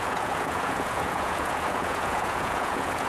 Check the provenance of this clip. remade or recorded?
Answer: remade